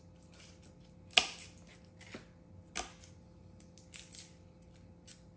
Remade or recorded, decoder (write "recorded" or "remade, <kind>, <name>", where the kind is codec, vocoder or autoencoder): recorded